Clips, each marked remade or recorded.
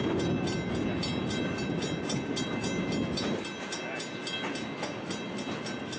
recorded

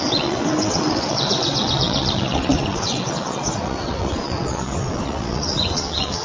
remade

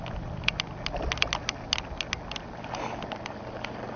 recorded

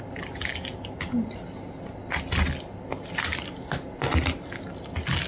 recorded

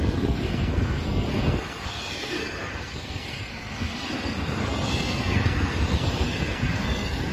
remade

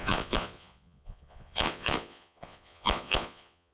remade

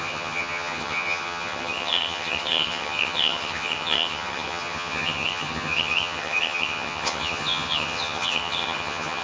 remade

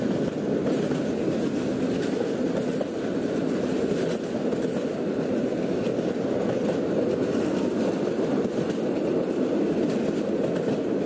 recorded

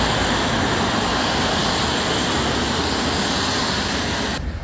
recorded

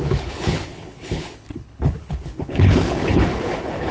remade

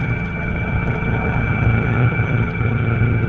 remade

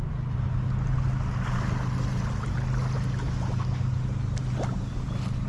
recorded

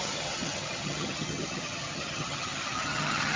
remade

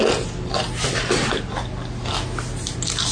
recorded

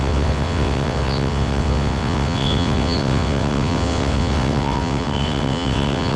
remade